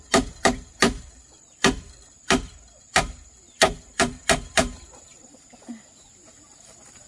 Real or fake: fake